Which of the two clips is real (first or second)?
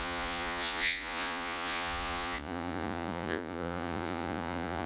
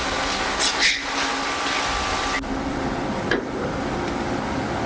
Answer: second